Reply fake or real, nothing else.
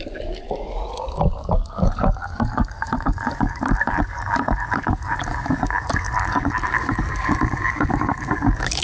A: fake